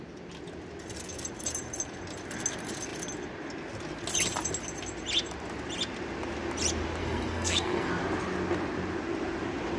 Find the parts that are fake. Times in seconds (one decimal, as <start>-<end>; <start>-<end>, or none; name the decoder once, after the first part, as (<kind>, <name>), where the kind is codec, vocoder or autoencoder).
7.0-7.9 (codec, SNAC)